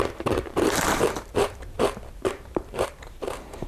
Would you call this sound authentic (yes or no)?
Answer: no